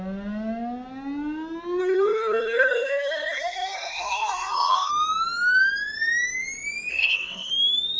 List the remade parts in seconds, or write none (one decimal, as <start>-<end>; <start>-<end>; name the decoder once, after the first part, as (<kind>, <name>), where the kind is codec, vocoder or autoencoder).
1.8-4.9 (codec, SNAC); 6.9-7.5